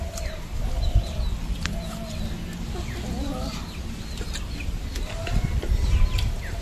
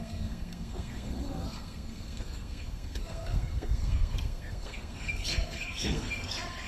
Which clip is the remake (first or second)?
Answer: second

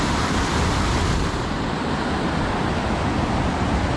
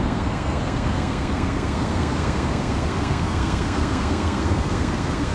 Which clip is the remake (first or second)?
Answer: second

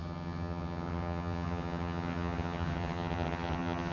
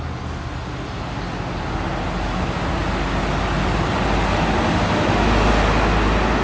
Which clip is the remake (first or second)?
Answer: first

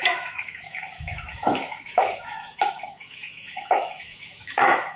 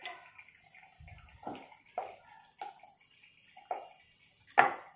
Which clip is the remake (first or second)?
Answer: first